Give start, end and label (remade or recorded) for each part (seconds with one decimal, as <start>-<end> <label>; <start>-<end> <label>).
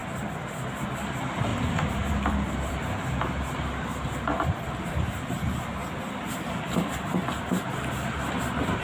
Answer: 0.0-1.5 recorded; 1.5-2.8 remade; 2.8-5.8 recorded; 5.8-6.9 remade; 6.9-8.8 recorded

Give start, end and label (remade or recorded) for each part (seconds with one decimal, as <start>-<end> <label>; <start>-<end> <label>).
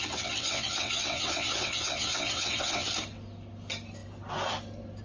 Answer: 0.0-2.9 remade; 2.9-5.0 recorded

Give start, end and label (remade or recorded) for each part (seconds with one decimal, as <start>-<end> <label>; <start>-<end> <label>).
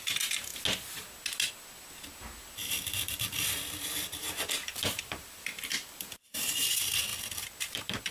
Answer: 0.0-2.6 recorded; 2.6-6.3 remade; 6.3-7.1 recorded; 7.1-8.1 remade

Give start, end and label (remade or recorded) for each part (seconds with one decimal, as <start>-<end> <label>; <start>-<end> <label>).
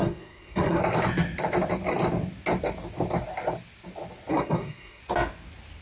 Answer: 0.0-0.8 remade; 0.8-4.3 recorded; 4.3-5.0 remade; 5.0-5.8 recorded